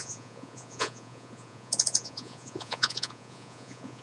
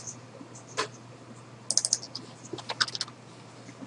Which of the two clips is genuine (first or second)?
second